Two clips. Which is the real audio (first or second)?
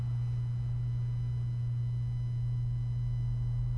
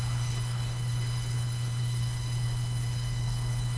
first